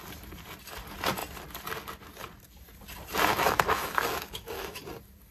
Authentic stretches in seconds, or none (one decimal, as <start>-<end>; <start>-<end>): 0.0-3.3; 4.8-5.3